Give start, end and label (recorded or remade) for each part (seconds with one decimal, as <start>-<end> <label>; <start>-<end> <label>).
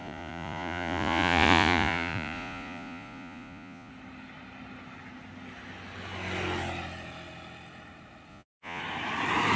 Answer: 0.0-3.9 remade; 3.9-8.3 recorded; 8.3-8.8 remade; 8.8-9.6 recorded